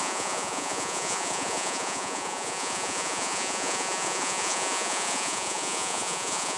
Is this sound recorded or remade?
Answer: remade